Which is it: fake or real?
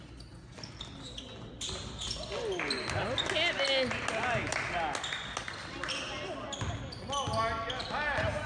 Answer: real